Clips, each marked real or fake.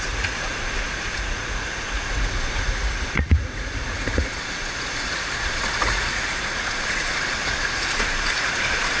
fake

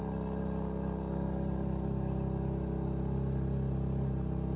real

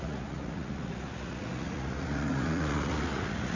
fake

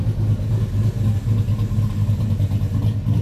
real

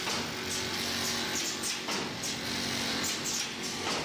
real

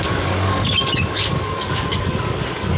fake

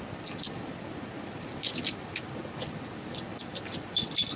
real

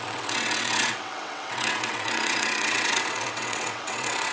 fake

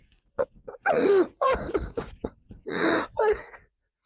fake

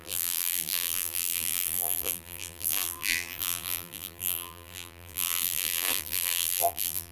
fake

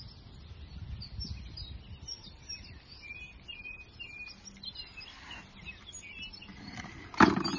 real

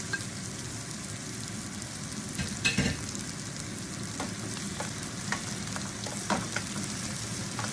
real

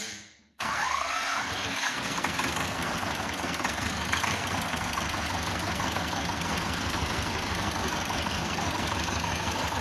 fake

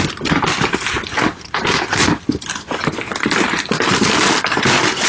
real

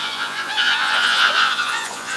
fake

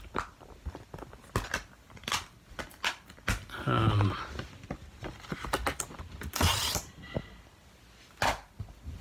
real